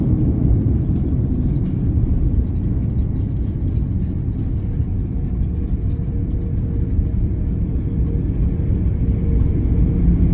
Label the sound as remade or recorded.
recorded